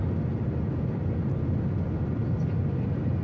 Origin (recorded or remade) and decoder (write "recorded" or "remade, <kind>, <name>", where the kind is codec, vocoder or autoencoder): recorded